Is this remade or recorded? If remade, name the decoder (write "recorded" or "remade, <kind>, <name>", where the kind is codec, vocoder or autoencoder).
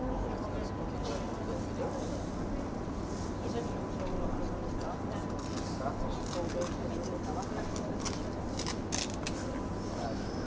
recorded